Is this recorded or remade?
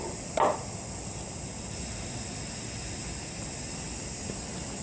recorded